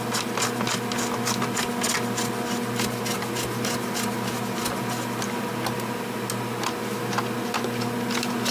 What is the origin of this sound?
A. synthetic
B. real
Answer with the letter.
B